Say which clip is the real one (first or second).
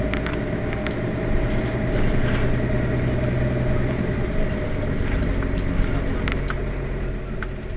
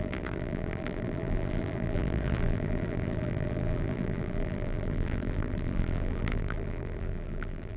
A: first